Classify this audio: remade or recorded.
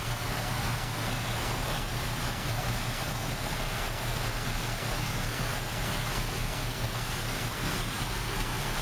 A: remade